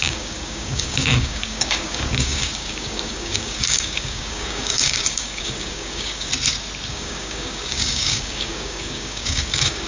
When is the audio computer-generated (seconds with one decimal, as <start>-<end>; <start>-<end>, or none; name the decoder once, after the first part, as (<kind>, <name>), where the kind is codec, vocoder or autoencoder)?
0.0-6.3 (codec, DAC); 6.9-9.9